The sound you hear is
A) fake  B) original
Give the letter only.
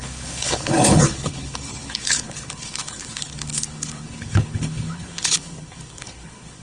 A